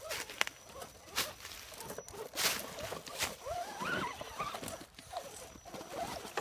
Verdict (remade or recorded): recorded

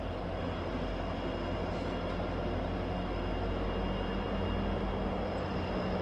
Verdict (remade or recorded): recorded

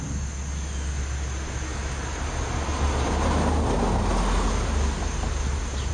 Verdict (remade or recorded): recorded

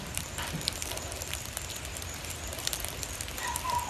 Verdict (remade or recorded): recorded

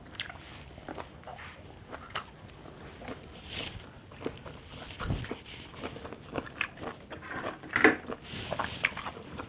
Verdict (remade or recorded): recorded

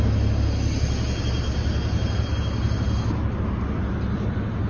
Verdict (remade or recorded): recorded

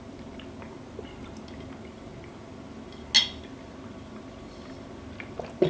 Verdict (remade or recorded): recorded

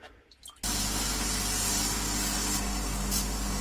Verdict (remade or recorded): recorded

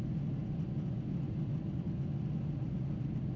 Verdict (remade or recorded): recorded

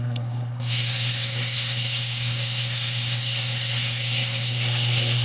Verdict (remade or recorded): remade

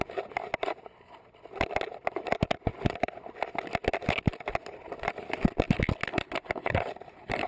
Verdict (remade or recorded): recorded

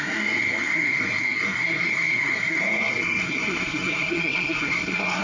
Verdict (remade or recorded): remade